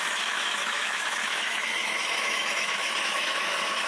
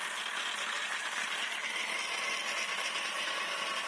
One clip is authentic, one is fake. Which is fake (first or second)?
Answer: first